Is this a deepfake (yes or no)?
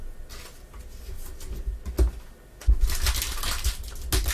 no